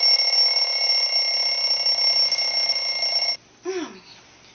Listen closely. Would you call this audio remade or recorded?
recorded